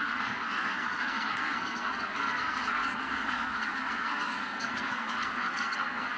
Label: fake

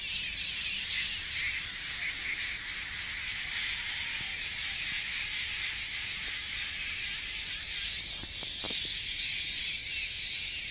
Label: real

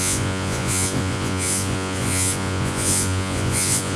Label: fake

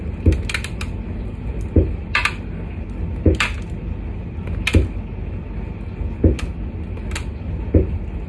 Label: real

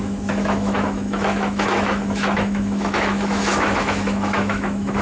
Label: fake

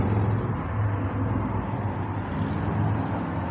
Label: real